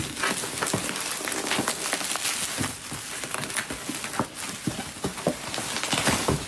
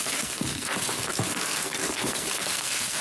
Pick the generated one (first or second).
second